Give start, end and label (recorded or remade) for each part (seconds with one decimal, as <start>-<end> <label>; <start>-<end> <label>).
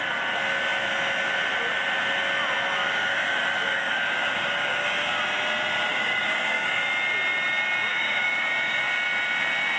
0.0-2.8 recorded; 2.8-5.2 remade; 5.2-5.9 recorded; 5.9-6.8 remade; 6.8-7.9 recorded; 7.9-8.8 remade; 8.8-9.8 recorded